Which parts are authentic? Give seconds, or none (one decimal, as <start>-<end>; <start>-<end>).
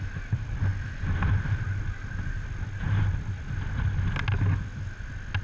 0.0-5.4